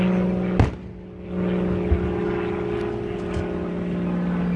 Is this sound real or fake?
real